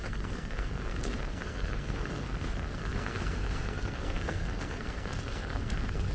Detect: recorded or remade remade